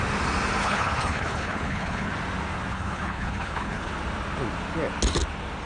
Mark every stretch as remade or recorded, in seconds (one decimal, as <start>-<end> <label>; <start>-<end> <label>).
0.0-0.6 recorded; 0.6-2.1 remade; 2.1-2.7 recorded; 2.7-3.9 remade; 3.9-5.7 recorded